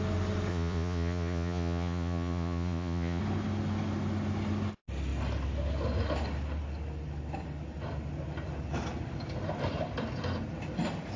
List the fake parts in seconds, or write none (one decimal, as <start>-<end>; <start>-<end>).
0.5-3.2